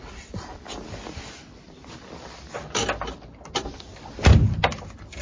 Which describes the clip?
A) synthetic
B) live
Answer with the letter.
B